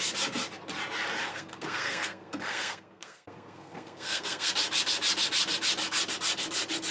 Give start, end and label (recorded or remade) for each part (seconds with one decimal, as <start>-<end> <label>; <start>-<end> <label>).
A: 0.0-1.3 recorded; 1.3-4.5 remade; 4.5-6.9 recorded